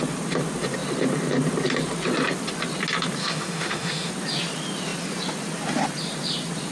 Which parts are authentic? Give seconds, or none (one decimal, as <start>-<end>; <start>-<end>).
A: 0.0-3.2; 4.1-6.7

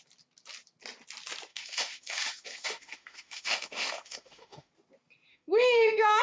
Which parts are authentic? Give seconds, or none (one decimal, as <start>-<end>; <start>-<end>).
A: 0.0-1.5; 4.7-5.3

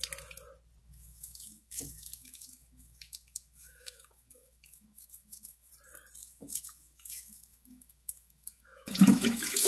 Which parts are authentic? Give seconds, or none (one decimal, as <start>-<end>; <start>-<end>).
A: 0.0-0.8; 5.7-6.2

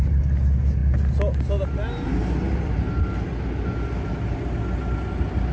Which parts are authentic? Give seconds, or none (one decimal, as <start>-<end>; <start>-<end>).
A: 0.0-5.5

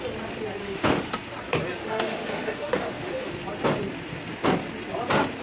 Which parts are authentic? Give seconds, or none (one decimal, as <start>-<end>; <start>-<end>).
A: 0.0-0.6; 1.1-1.8; 3.3-5.4

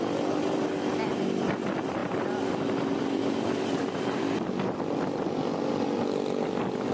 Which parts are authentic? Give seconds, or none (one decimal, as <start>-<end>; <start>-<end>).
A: 0.0-6.9

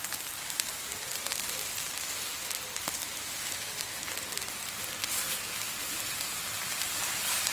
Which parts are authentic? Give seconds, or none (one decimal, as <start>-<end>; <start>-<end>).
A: 0.0-3.0; 3.7-7.5